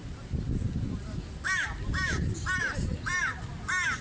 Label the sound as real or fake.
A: real